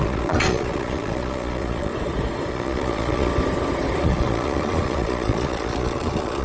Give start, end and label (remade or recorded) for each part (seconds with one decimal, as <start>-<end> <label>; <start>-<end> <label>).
0.0-1.9 remade; 1.9-2.5 recorded; 2.5-3.3 remade; 3.3-4.0 recorded; 4.0-6.4 remade